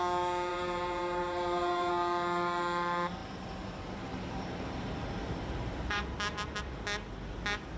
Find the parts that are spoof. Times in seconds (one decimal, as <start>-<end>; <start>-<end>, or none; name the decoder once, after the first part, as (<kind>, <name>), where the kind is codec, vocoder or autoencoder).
0.5-1.9 (vocoder, BigVGAN v2); 3.2-6.0